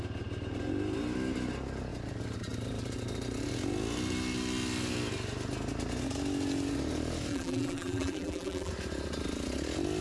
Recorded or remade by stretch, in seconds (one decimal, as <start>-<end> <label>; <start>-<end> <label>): 0.0-7.3 recorded; 7.3-8.7 remade; 8.7-10.0 recorded